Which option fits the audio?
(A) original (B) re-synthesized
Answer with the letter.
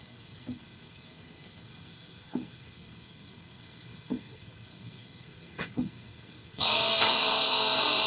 B